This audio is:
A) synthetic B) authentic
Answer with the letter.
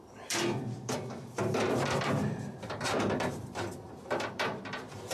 A